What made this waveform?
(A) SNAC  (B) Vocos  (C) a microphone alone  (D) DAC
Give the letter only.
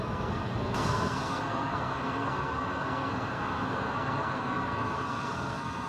A